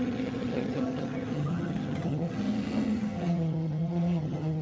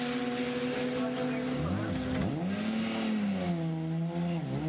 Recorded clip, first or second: second